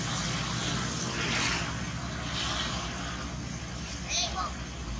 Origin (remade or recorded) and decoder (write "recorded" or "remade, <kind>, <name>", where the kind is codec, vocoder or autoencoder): recorded